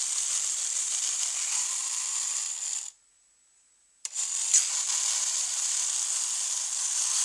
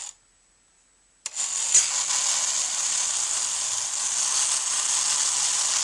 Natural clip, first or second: second